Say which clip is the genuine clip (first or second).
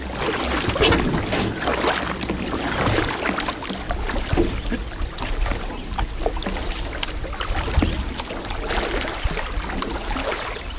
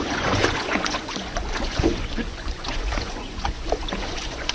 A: first